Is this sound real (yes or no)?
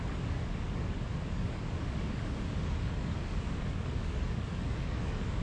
no